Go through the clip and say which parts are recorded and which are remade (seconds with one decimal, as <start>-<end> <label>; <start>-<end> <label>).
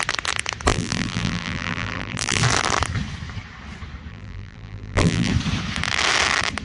0.0-0.7 recorded; 0.7-2.4 remade; 2.4-4.1 recorded; 4.1-5.3 remade; 5.3-6.6 recorded